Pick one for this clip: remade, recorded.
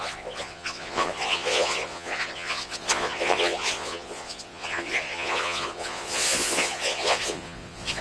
remade